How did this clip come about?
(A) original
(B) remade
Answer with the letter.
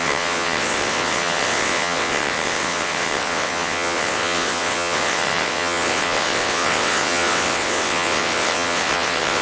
B